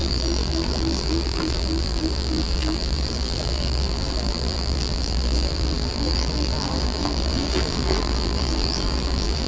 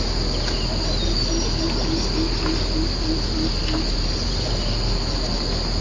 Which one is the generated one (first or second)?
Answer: first